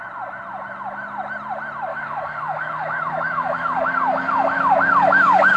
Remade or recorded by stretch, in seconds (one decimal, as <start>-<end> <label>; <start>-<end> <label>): 0.0-1.9 recorded; 1.9-5.6 remade